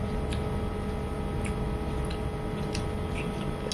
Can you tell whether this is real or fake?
real